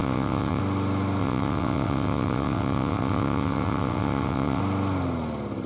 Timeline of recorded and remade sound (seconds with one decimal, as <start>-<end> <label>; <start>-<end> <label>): 0.0-0.6 remade; 0.6-1.2 recorded; 1.2-4.6 remade; 4.6-5.7 recorded